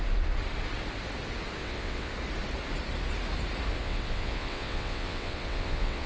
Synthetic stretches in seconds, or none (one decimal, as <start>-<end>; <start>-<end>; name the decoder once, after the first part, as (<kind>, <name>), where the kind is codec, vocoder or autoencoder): 1.6-2.1 (vocoder, WaveNeXt); 3.8-6.1